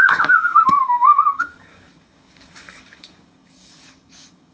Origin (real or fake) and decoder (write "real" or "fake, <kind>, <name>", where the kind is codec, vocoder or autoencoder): fake, codec, DAC